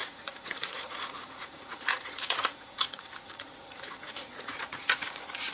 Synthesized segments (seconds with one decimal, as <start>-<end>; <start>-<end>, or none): 0.0-5.5

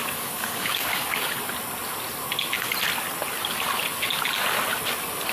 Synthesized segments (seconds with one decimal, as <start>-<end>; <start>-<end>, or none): 0.0-1.4

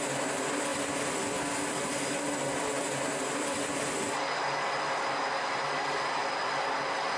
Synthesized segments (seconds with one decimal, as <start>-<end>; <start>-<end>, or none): none

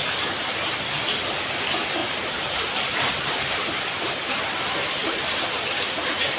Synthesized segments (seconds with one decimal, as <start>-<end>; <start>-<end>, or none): 2.0-4.4; 5.0-5.8

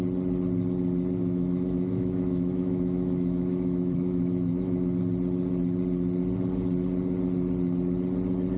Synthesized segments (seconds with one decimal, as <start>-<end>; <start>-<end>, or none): 1.2-5.0

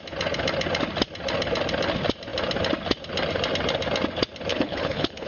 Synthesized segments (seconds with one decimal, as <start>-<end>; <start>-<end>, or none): 4.5-5.3

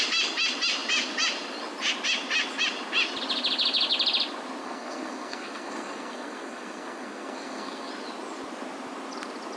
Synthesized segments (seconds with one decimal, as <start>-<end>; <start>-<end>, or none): 4.6-7.9